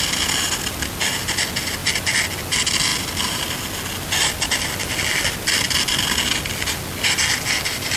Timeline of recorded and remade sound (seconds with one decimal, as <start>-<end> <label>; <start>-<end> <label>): 0.0-8.0 recorded